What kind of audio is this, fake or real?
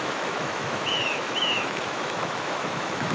fake